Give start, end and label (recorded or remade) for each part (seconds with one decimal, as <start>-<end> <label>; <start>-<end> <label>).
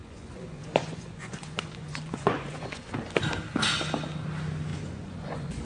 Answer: 0.0-2.8 remade; 2.8-4.7 recorded; 4.7-5.6 remade